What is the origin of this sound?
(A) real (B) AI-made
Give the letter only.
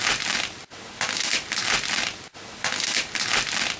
A